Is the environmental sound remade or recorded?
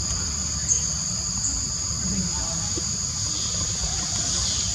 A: recorded